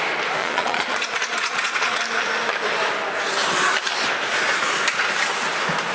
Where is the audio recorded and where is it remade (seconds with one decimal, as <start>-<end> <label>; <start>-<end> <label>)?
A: 0.0-0.4 recorded; 0.4-2.0 remade; 2.0-5.9 recorded